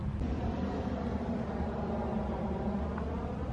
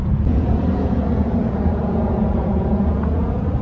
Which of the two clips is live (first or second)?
first